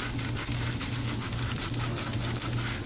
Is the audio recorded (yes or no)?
yes